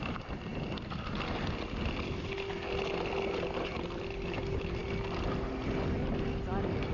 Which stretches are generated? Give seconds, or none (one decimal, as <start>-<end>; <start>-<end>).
none